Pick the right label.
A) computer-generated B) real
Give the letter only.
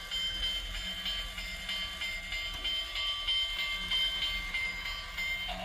B